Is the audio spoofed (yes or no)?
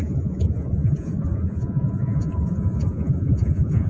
yes